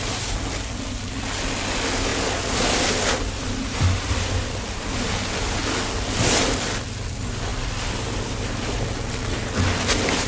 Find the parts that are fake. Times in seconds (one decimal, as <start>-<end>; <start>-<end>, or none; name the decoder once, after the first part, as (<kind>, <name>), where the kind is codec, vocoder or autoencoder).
2.1-5.6 (vocoder, BigVGAN v2)